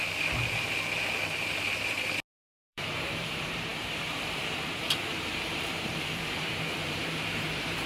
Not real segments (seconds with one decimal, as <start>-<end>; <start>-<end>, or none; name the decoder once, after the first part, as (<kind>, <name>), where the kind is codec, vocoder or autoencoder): 2.4-7.9 (vocoder, BigVGAN v2)